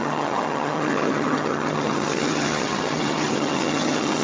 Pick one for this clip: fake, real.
fake